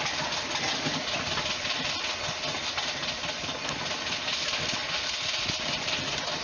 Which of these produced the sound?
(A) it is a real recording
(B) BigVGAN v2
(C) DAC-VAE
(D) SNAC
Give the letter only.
A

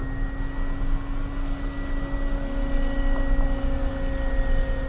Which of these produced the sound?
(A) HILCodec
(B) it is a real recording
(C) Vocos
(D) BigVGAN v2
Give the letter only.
B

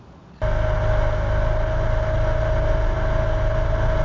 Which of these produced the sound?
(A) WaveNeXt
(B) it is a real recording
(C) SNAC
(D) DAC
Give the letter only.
B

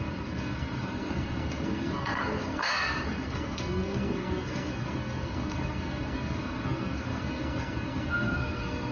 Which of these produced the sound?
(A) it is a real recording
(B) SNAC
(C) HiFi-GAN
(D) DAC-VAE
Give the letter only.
B